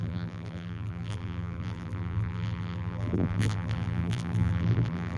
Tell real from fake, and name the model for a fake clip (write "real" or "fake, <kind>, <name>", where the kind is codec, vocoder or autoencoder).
fake, vocoder, BigVGAN v2